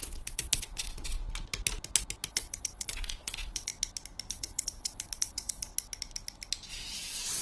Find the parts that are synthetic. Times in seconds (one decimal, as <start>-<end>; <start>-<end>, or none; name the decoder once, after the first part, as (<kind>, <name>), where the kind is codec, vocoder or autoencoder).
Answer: 0.0-1.2 (vocoder, Vocos); 2.3-3.7; 4.3-5.7; 6.7-7.4